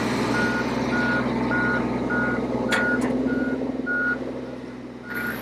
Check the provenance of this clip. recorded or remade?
recorded